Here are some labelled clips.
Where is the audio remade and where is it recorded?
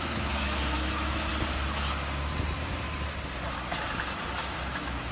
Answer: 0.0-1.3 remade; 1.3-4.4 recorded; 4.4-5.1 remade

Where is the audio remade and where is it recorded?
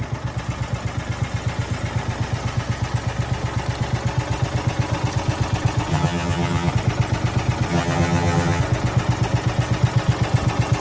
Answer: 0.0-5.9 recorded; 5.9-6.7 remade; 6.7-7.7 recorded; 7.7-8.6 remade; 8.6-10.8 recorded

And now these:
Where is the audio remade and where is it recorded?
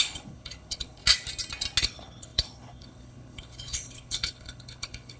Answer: 0.0-1.0 remade; 1.0-1.8 recorded; 1.8-5.2 remade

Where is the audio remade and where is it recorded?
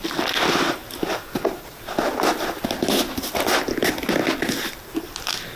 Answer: 0.0-5.6 recorded